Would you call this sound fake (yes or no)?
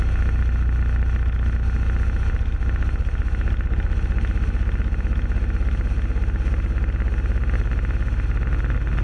no